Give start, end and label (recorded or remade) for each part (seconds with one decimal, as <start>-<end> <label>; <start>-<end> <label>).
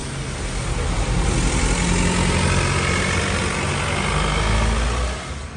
0.0-5.6 recorded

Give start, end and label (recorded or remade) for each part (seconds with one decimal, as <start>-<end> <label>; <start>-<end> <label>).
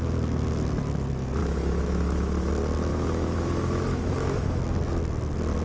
0.0-1.4 recorded; 1.4-2.5 remade; 2.5-2.9 recorded; 2.9-4.6 remade; 4.6-5.6 recorded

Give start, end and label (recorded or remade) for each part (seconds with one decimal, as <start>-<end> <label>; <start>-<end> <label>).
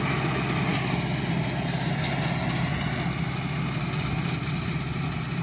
0.0-5.4 recorded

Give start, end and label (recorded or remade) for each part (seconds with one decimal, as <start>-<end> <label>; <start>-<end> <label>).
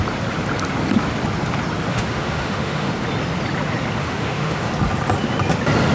0.0-1.9 recorded; 1.9-2.9 remade; 2.9-4.0 recorded; 4.0-4.7 remade; 4.7-5.9 recorded